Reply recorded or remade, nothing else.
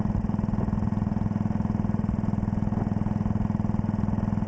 recorded